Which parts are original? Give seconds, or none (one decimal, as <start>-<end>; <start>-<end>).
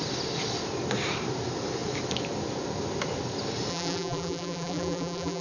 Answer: 0.0-3.7